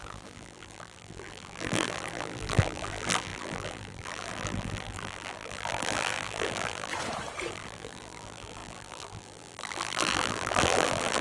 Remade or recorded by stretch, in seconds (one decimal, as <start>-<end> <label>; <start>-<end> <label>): 0.0-6.9 remade; 6.9-7.5 recorded; 7.5-11.2 remade